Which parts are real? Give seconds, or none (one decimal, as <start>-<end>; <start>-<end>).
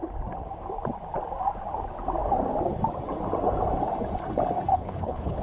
0.0-4.7